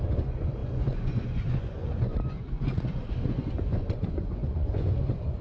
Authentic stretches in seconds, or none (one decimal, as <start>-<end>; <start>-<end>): none

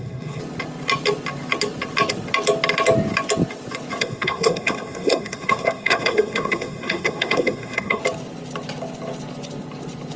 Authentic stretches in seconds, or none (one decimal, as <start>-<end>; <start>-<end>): 0.4-4.0; 8.0-10.2

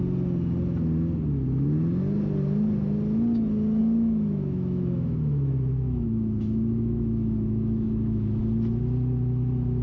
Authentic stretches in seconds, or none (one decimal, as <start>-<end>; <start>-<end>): 0.0-3.8; 8.4-9.8